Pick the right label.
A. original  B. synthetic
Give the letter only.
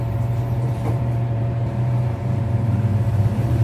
B